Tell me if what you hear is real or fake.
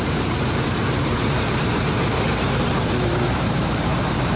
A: fake